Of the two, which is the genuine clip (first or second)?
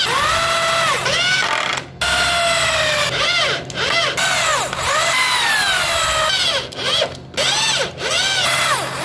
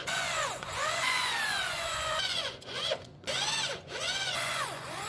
first